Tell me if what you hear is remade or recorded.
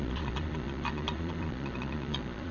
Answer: remade